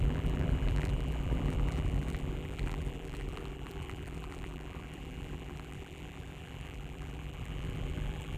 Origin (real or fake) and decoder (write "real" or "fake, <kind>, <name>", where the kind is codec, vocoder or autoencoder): fake, vocoder, BigVGAN v2